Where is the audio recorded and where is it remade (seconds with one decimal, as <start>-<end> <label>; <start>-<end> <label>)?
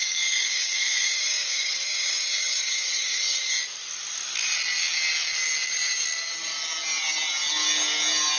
0.0-3.5 remade; 3.5-8.4 recorded